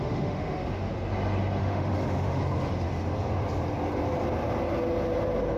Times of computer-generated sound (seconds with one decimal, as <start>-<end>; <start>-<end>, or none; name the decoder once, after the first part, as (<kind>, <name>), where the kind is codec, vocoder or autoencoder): 0.0-0.9 (autoencoder, DAC-VAE); 1.6-2.4